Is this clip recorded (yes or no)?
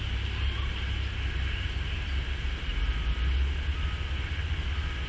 yes